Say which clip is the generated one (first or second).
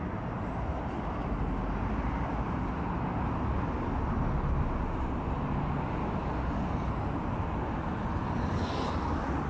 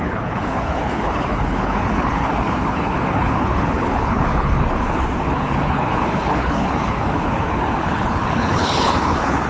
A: second